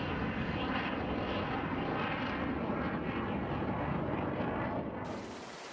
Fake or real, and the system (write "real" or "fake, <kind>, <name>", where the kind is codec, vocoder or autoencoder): real